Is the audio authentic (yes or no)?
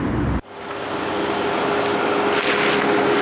yes